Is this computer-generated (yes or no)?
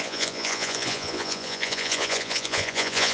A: yes